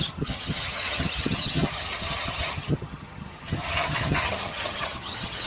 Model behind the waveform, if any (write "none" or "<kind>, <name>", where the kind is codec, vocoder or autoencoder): vocoder, HiFi-GAN